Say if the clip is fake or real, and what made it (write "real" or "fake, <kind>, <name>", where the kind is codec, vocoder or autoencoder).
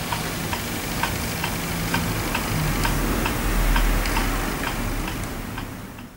real